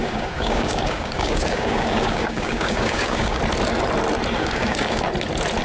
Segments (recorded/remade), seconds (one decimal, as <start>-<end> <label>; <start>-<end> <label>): 0.0-3.4 remade; 3.4-4.4 recorded; 4.4-5.0 remade; 5.0-5.6 recorded